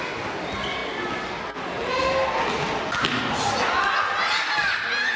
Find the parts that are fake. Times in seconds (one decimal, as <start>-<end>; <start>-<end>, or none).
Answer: none